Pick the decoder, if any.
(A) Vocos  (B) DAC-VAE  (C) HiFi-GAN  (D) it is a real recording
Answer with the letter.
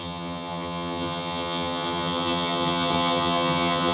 C